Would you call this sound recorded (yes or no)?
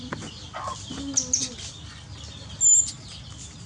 yes